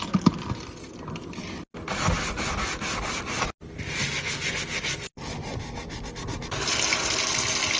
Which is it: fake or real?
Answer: real